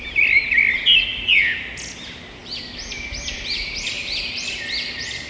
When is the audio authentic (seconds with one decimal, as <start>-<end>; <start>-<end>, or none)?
0.0-2.4; 4.5-5.3